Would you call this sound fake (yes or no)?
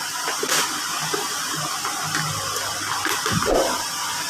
yes